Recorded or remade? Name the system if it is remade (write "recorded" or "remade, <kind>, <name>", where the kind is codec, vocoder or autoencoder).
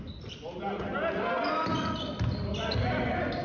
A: recorded